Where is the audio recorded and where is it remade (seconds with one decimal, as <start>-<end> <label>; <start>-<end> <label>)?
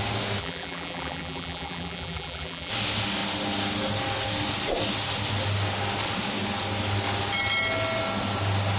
0.0-0.4 recorded; 0.4-2.7 remade; 2.7-8.8 recorded